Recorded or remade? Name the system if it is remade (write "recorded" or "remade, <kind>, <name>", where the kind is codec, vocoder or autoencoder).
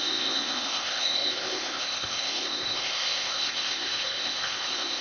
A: remade, codec, ZipCodec